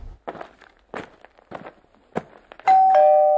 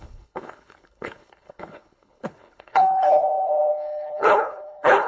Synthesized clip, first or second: second